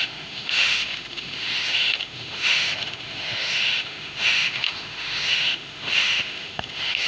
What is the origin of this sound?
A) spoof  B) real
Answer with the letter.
A